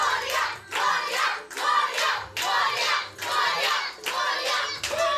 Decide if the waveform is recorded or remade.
recorded